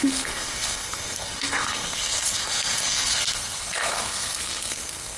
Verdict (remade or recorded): remade